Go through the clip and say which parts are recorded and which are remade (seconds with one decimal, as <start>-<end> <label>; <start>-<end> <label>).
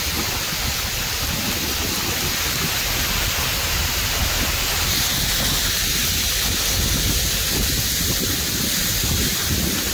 0.0-9.9 recorded